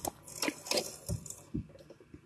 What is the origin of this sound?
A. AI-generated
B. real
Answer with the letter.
B